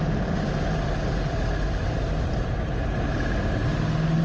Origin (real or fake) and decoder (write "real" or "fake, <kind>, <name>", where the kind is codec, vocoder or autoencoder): real